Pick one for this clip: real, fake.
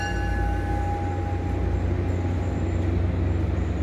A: real